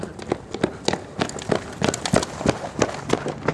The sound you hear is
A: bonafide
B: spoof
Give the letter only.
A